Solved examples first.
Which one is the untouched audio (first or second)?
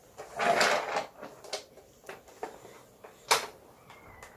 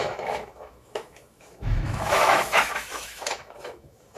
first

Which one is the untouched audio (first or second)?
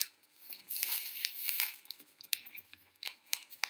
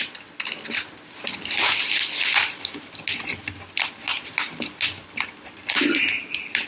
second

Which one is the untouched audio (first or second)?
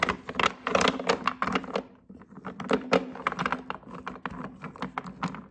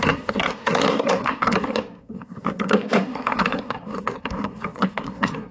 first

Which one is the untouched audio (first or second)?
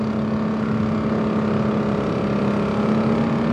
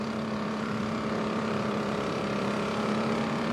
first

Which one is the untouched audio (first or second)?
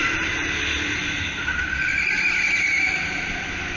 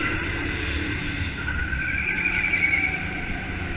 first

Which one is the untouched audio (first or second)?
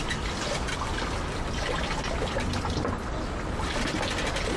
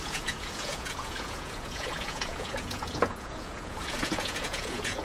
first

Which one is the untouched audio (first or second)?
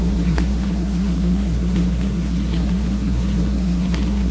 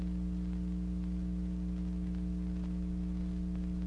second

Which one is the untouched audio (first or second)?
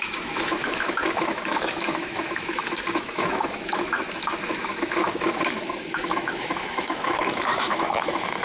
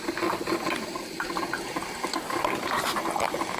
second